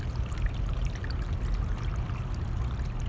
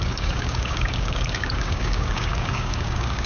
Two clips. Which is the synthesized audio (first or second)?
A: second